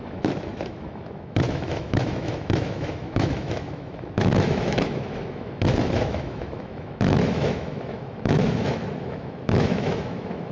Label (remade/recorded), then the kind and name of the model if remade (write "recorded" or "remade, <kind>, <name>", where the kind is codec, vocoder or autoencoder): remade, autoencoder, DAC-VAE